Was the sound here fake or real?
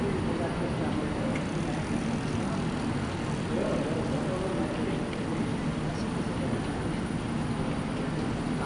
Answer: real